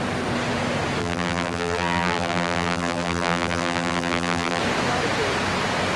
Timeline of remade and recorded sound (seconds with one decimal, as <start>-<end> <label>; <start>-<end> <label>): 0.0-1.0 recorded; 1.0-4.6 remade; 4.6-6.0 recorded